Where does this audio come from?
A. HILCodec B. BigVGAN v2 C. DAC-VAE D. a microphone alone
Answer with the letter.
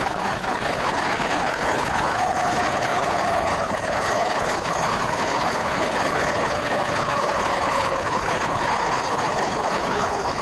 A